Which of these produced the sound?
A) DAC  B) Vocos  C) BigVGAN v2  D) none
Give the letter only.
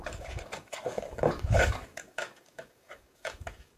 A